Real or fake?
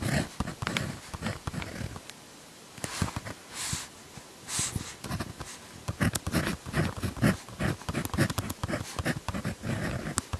real